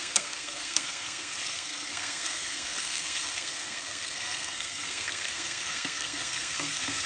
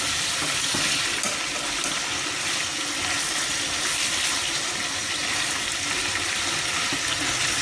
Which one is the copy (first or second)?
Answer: first